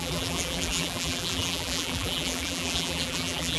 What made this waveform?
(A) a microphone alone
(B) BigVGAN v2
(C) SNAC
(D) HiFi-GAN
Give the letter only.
B